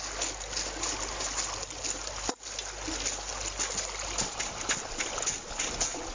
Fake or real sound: real